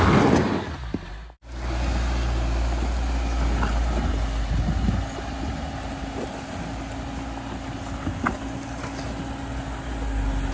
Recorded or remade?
recorded